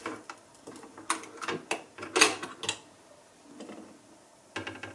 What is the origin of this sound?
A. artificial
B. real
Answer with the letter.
B